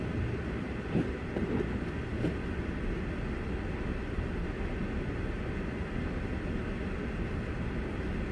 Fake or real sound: real